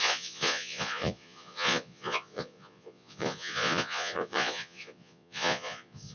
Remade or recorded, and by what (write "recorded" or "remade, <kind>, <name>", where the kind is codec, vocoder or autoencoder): remade, vocoder, Vocos